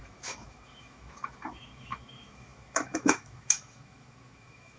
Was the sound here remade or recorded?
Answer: remade